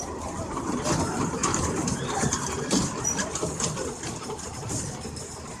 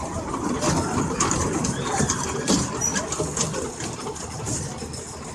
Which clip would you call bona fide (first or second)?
second